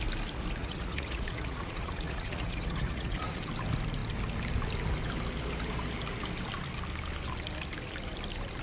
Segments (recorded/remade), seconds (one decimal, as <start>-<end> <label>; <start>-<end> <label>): 0.0-0.6 recorded; 0.6-3.4 remade; 3.4-8.6 recorded